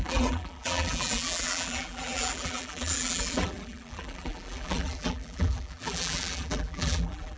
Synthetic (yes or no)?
yes